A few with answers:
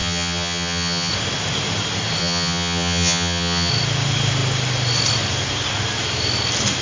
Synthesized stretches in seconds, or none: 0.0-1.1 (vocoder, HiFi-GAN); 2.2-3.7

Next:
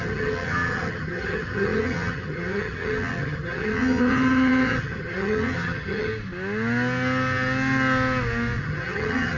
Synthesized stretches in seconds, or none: 0.0-6.1 (vocoder, HiFi-GAN); 8.6-9.4

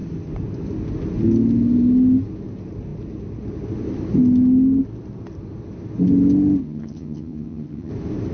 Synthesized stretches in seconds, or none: 6.6-7.9 (vocoder, HiFi-GAN)

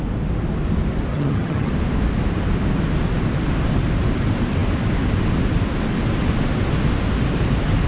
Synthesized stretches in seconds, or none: 1.1-1.7 (vocoder, HiFi-GAN)

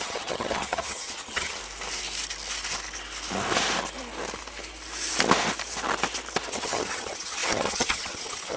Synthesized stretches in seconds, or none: 0.0-1.6 (vocoder, HiFi-GAN); 6.5-8.6

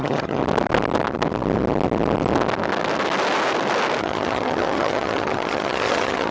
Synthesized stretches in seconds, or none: 0.0-0.4 (vocoder, HiFi-GAN); 4.0-6.3

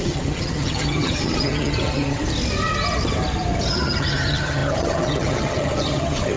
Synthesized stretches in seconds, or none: 0.0-2.2 (vocoder, HiFi-GAN); 3.7-6.4